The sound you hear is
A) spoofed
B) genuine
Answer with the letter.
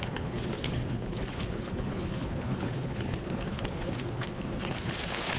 A